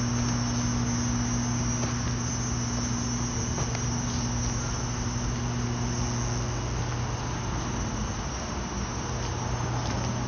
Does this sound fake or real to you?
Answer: real